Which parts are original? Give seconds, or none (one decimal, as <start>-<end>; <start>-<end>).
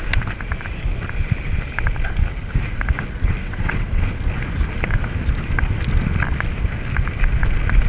0.0-3.4; 4.0-7.9